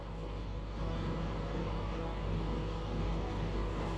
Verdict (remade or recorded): remade